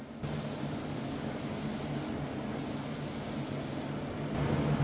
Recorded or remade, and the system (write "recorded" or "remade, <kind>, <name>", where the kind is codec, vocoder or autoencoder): recorded